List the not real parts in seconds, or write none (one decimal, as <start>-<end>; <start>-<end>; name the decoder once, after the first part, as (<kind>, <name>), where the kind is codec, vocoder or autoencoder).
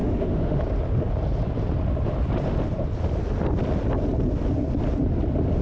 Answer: 0.0-0.6 (autoencoder, DAC-VAE)